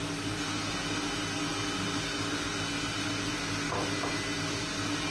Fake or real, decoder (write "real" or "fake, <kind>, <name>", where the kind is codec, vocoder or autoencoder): real